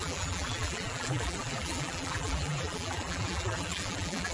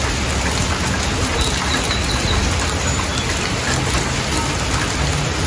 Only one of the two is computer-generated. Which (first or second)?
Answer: first